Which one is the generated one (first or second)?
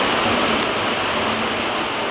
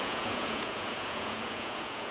second